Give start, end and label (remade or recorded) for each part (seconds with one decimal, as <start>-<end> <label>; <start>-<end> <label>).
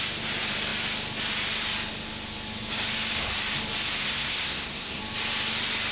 0.0-4.0 recorded; 4.0-5.0 remade; 5.0-5.9 recorded